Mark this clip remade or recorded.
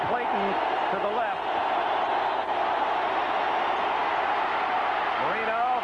recorded